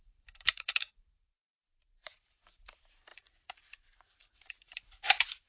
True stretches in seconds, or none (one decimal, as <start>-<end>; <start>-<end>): none